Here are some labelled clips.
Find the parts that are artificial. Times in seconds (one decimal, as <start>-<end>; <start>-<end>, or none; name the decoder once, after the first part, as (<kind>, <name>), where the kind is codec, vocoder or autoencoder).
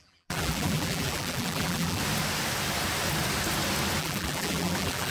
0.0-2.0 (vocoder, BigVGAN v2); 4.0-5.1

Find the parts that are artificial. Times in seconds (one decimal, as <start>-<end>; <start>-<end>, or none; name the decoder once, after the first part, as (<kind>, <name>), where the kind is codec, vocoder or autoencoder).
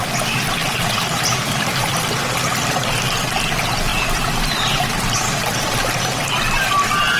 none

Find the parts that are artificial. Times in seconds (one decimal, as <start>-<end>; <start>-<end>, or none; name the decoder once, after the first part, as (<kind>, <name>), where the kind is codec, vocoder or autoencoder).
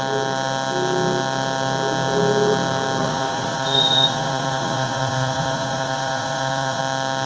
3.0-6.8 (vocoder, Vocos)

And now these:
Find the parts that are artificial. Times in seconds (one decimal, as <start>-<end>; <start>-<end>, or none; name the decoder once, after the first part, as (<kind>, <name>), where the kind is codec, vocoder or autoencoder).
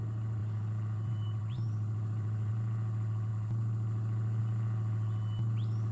0.4-2.5 (vocoder, Vocos)